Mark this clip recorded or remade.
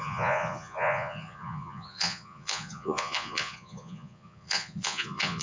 remade